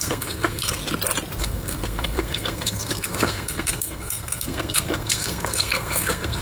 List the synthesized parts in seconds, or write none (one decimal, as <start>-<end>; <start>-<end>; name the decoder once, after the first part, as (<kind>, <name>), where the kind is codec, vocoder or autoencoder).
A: 0.0-0.8 (codec, SNAC); 1.4-6.4